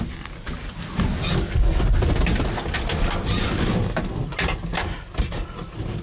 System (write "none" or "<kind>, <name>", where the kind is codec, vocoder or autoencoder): none